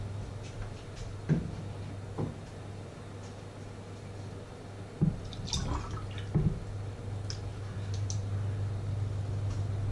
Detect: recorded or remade recorded